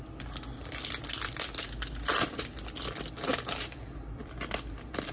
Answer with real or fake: real